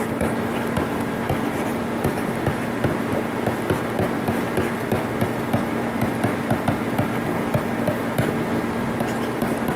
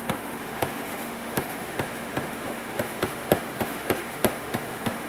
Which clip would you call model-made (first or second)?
second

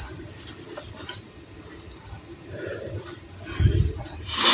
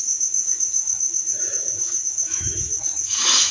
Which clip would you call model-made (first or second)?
second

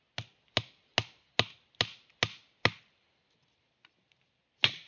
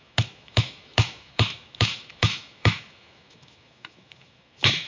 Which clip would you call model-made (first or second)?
second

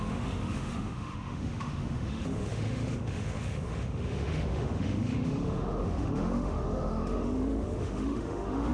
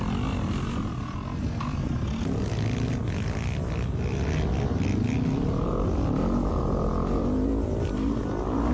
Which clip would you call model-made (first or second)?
first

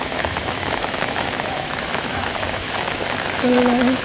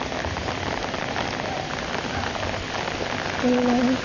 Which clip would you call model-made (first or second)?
first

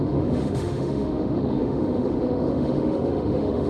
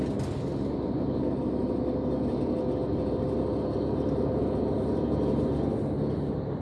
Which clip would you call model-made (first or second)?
first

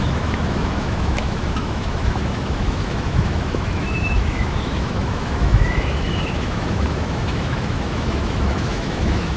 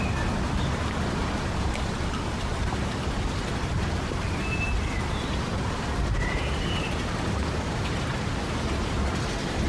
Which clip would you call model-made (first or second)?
first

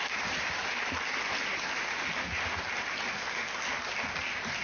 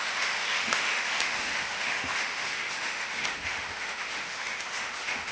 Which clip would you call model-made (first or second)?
second